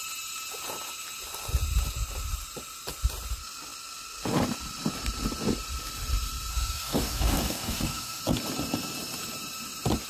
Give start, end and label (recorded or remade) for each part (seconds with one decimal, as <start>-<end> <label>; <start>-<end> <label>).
0.0-6.5 recorded; 6.5-8.2 remade; 8.2-10.1 recorded